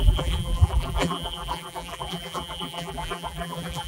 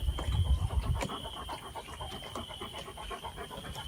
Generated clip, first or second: first